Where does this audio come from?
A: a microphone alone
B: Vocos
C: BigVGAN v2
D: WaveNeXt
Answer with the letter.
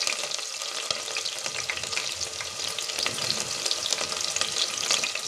A